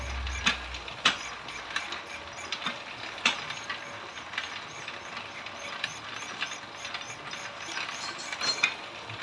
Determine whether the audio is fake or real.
real